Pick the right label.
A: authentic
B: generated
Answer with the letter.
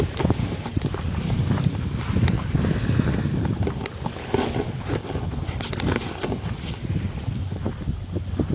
A